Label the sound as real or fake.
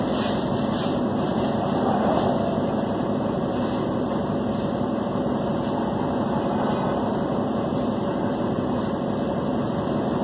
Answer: real